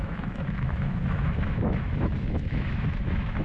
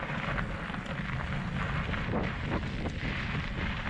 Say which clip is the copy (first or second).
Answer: first